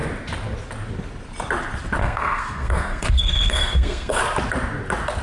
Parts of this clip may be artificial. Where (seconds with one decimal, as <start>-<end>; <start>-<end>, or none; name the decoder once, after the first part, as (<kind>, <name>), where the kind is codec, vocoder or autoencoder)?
2.0-4.2 (codec, SNAC)